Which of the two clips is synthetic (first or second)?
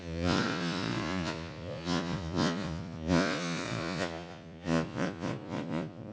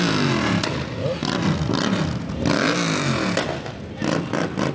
first